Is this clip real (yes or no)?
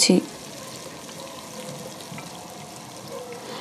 yes